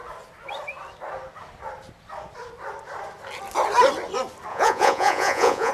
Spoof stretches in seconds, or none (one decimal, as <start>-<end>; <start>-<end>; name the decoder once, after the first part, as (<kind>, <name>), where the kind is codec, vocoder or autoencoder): 4.5-5.7 (vocoder, Vocos)